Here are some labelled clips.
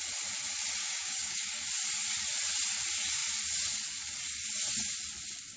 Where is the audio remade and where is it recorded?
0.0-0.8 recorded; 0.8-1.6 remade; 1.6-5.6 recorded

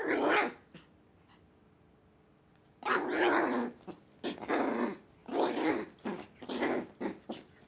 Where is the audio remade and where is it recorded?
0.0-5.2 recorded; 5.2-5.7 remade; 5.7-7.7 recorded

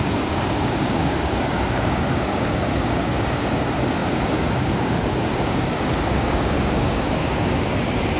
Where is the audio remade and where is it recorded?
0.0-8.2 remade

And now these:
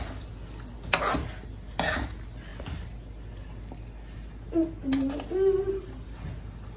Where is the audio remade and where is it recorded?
0.0-6.8 recorded

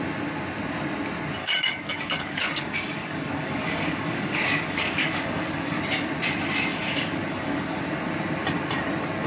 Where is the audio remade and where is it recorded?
0.0-1.4 recorded; 1.4-5.8 remade; 5.8-6.7 recorded; 6.7-7.8 remade; 7.8-9.3 recorded

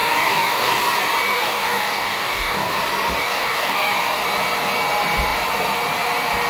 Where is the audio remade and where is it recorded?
0.0-0.8 remade; 0.8-1.3 recorded; 1.3-2.7 remade; 2.7-3.2 recorded; 3.2-3.9 remade; 3.9-6.5 recorded

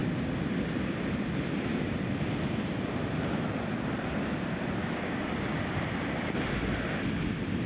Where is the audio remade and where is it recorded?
0.0-4.8 recorded; 4.8-5.6 remade; 5.6-7.7 recorded